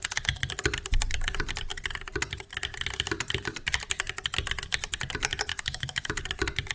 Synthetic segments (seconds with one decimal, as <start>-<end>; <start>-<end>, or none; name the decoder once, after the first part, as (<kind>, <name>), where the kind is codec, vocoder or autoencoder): 5.5-6.2 (autoencoder, DAC-VAE)